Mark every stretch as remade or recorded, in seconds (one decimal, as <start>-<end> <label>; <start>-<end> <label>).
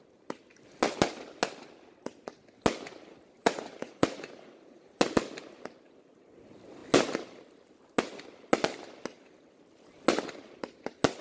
0.0-3.4 recorded; 3.4-5.0 remade; 5.0-11.2 recorded